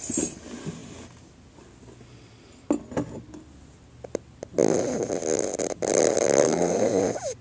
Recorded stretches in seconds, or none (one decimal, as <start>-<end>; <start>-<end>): 0.0-6.4; 7.0-7.4